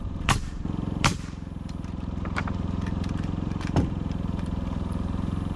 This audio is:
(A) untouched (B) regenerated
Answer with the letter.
B